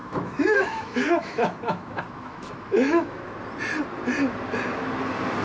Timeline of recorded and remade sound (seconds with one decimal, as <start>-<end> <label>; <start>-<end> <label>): 0.0-3.2 remade; 3.2-5.4 recorded